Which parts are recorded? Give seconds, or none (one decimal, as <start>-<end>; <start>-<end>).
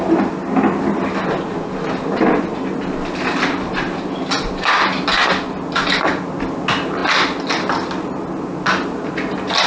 0.0-9.7